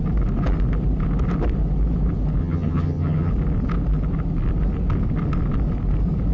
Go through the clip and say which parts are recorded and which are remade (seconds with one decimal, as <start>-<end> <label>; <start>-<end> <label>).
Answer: 0.0-2.4 recorded; 2.4-3.3 remade; 3.3-6.3 recorded

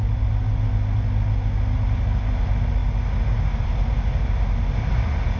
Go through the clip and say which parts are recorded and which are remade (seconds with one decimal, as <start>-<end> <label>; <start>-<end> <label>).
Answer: 0.0-5.4 recorded

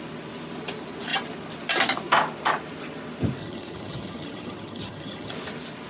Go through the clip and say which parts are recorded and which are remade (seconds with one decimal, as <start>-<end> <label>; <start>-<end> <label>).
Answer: 0.0-3.4 recorded; 3.4-5.3 remade; 5.3-5.9 recorded

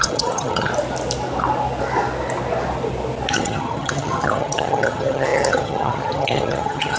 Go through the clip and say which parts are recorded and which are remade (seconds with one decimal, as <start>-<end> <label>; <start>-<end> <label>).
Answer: 0.0-0.7 remade; 0.7-3.3 recorded; 3.3-7.0 remade